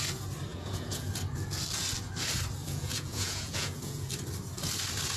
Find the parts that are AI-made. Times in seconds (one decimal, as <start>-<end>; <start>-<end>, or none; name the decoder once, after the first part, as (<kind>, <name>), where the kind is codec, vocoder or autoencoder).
0.5-1.1 (vocoder, Vocos); 2.6-4.1